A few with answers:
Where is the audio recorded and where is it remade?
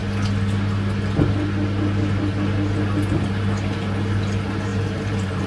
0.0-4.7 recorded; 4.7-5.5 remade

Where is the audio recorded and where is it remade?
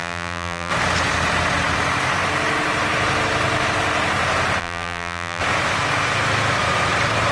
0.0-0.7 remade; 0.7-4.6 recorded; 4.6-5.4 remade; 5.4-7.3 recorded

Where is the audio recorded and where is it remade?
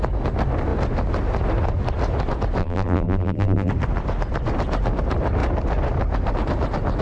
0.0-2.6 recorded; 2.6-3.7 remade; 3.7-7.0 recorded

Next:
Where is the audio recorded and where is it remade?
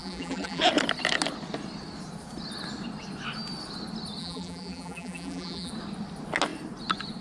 0.0-0.6 remade; 0.6-4.2 recorded; 4.2-5.7 remade; 5.7-7.2 recorded